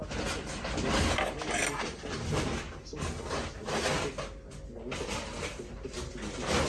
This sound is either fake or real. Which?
real